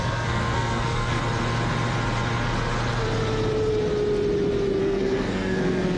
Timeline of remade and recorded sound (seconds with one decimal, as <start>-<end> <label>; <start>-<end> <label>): 0.0-1.2 remade; 1.2-4.8 recorded; 4.8-6.0 remade